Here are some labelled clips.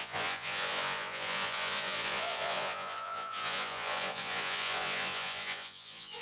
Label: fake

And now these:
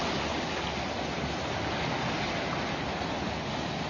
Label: real